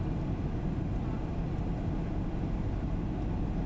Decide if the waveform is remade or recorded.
recorded